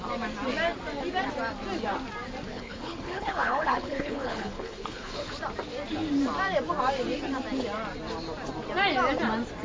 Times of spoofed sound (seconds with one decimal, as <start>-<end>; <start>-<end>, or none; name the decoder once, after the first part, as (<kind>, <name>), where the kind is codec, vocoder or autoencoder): 2.5-5.3 (codec, HILCodec)